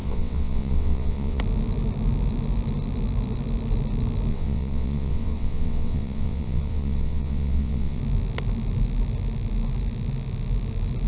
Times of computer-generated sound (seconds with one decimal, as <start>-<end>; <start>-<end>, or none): 0.0-1.4; 4.3-8.0